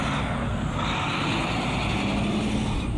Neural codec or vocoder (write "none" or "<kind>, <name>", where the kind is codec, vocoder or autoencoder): none